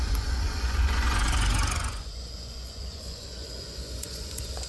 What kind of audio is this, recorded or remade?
remade